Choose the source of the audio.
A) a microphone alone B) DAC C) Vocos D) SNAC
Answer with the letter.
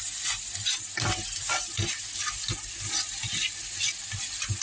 A